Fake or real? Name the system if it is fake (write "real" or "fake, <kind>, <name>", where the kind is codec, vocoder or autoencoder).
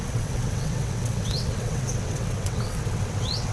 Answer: fake, vocoder, WaveNeXt